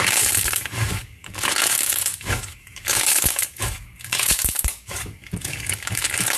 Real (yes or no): no